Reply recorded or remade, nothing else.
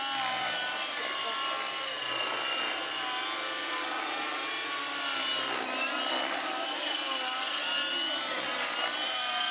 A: recorded